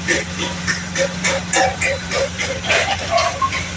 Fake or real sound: fake